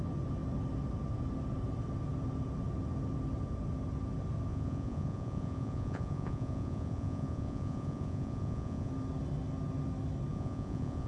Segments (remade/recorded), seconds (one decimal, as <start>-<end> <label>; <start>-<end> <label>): 0.0-4.5 recorded; 4.5-8.9 remade; 8.9-10.3 recorded; 10.3-11.1 remade